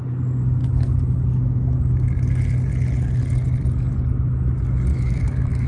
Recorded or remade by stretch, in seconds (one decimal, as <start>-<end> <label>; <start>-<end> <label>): 0.0-4.9 recorded; 4.9-5.7 remade